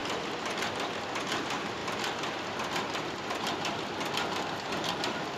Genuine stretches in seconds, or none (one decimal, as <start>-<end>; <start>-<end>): 0.7-1.8; 4.9-5.4

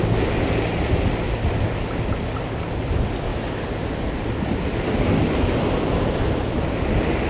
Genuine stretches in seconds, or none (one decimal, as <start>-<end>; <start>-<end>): 0.0-7.3

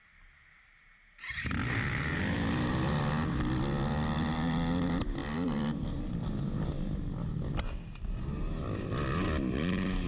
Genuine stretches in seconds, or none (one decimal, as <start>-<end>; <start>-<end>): 0.0-10.1

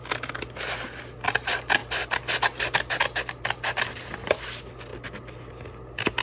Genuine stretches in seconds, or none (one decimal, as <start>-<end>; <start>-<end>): 0.0-6.2

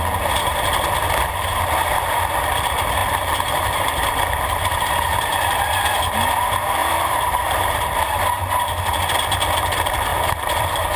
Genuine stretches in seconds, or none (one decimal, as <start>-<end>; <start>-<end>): 0.0-3.0; 5.6-6.8; 8.2-10.1

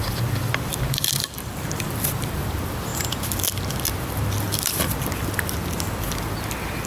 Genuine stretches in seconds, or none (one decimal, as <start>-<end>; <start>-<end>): 2.9-4.2